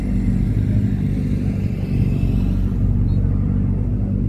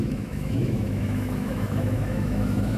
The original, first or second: first